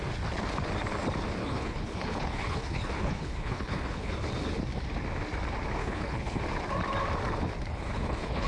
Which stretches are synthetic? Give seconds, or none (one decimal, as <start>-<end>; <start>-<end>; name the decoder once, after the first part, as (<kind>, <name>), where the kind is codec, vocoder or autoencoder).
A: 1.4-4.1 (codec, HILCodec); 5.8-6.4; 7.7-8.5